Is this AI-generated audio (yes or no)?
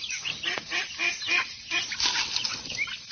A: no